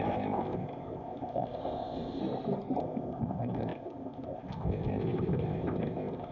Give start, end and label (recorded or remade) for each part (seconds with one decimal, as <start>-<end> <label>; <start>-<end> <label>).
0.0-2.2 remade; 2.2-2.8 recorded; 2.8-6.3 remade